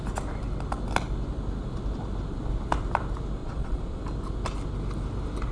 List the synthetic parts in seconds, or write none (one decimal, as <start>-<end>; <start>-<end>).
3.4-4.0